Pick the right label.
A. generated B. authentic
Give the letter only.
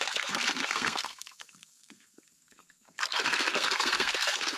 A